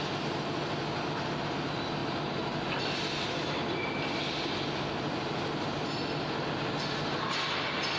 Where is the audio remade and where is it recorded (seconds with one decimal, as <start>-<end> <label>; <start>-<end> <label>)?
0.0-8.0 recorded